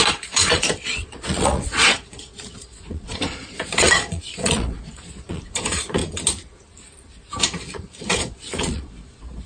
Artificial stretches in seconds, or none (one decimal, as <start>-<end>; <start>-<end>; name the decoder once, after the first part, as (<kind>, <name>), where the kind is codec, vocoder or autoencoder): 0.0-6.0 (vocoder, Vocos); 7.6-9.5